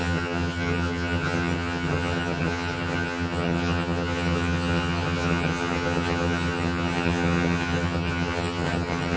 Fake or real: fake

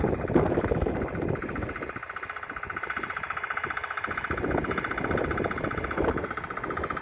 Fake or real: real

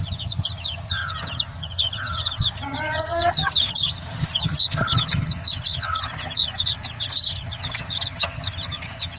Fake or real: fake